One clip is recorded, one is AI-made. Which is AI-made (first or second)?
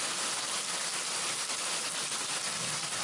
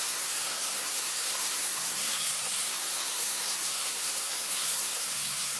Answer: second